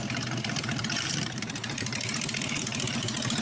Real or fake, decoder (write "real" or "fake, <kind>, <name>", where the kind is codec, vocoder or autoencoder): fake, vocoder, BigVGAN v2